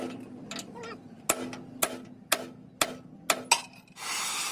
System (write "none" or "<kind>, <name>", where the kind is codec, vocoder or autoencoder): none